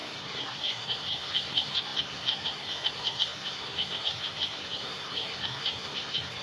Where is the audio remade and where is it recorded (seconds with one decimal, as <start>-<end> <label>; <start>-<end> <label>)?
0.0-6.4 remade